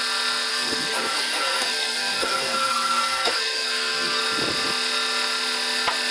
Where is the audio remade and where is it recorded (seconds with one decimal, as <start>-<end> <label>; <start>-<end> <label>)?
0.0-0.5 recorded; 0.5-4.2 remade; 4.2-6.1 recorded